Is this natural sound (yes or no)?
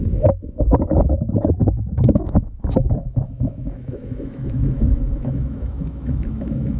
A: no